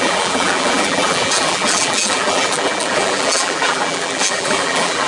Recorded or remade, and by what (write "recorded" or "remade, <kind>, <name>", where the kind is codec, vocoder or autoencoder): remade, vocoder, BigVGAN v2